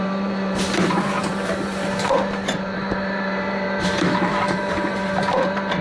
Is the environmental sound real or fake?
fake